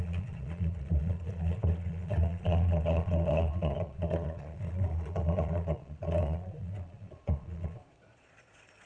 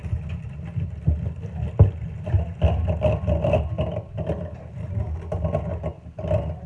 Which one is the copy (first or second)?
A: first